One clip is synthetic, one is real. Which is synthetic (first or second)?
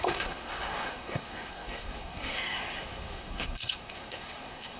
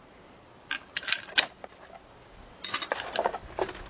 first